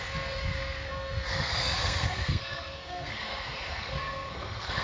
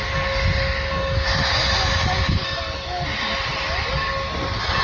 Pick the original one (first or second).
second